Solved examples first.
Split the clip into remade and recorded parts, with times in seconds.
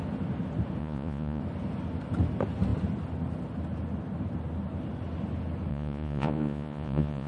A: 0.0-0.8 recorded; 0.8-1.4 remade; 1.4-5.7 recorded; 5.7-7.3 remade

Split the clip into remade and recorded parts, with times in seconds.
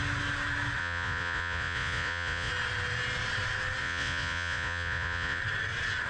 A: 0.0-0.8 recorded; 0.8-2.5 remade; 2.5-3.8 recorded; 3.8-5.4 remade; 5.4-6.1 recorded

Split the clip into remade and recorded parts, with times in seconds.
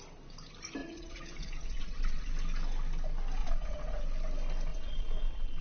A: 0.0-0.8 recorded; 0.8-2.3 remade; 2.3-3.4 recorded; 3.4-4.0 remade; 4.0-4.7 recorded; 4.7-5.6 remade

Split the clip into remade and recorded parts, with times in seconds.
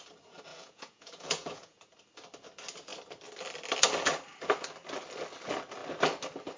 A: 0.0-0.5 recorded; 0.5-1.8 remade; 1.8-6.6 recorded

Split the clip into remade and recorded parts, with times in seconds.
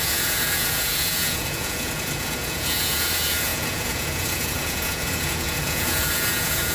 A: 0.0-6.7 remade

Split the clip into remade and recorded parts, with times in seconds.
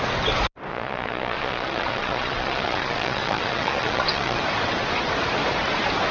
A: 0.0-0.7 recorded; 0.7-4.4 remade; 4.4-6.1 recorded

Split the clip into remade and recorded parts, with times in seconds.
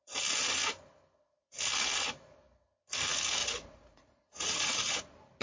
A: 0.0-3.4 recorded; 3.4-5.0 remade; 5.0-5.4 recorded